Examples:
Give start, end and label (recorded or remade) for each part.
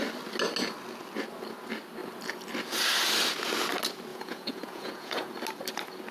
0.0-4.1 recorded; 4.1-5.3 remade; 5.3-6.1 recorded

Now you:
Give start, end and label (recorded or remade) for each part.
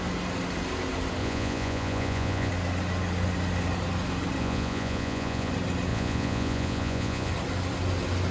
0.0-1.2 recorded; 1.2-2.5 remade; 2.5-4.4 recorded; 4.4-5.5 remade; 5.5-5.9 recorded; 5.9-7.3 remade; 7.3-8.3 recorded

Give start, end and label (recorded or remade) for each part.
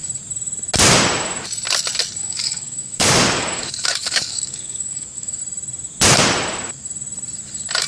0.0-2.2 recorded; 2.2-5.4 remade; 5.4-7.9 recorded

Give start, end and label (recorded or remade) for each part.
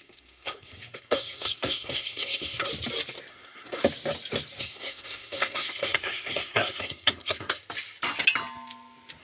0.0-2.7 remade; 2.7-3.3 recorded; 3.3-3.8 remade; 3.8-4.6 recorded; 4.6-7.6 remade; 7.6-9.2 recorded